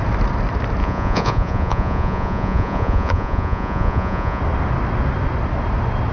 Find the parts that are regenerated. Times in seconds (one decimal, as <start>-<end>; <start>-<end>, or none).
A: 0.8-4.4